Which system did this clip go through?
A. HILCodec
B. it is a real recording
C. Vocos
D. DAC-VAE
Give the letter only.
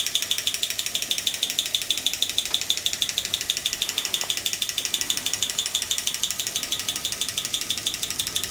B